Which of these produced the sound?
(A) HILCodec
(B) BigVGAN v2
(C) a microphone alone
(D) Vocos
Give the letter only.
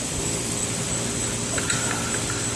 C